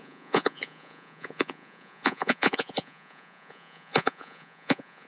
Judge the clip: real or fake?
fake